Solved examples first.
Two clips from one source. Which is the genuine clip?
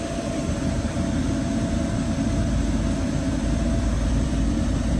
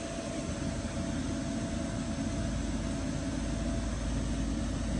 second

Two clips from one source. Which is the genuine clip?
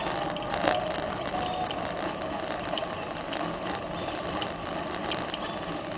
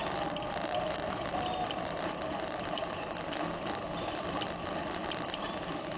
first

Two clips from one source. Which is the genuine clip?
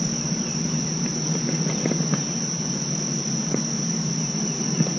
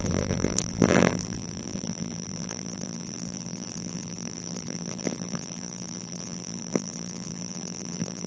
first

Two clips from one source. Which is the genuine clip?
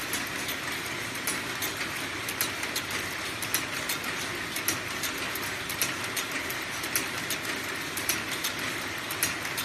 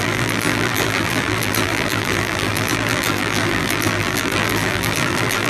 first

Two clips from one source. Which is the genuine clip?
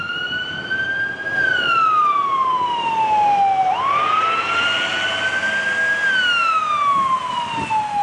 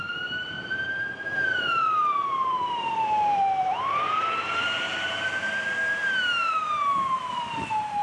first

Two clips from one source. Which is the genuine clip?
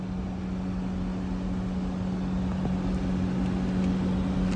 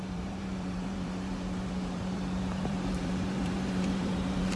first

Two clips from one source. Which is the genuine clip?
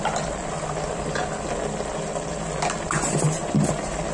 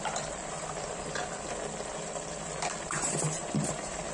first